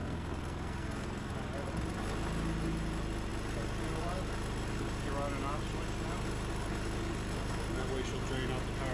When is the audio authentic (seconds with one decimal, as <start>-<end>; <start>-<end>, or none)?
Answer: 1.3-8.9